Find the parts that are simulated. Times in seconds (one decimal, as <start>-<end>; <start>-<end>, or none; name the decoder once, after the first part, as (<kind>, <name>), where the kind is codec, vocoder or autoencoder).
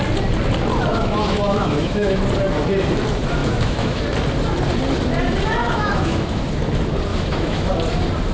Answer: 0.9-2.2 (autoencoder, DAC-VAE); 3.4-4.0; 5.6-6.4; 7.1-7.7